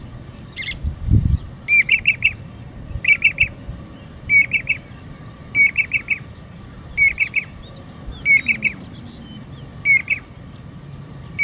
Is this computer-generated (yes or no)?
no